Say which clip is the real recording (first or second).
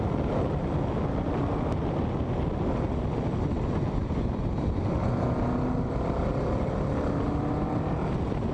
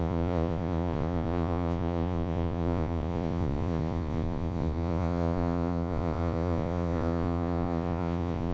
first